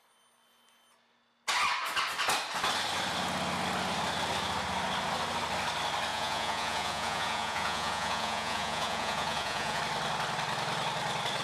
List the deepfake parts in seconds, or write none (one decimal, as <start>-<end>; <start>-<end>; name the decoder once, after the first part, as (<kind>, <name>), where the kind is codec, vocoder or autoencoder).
6.1-9.8 (vocoder, Vocos)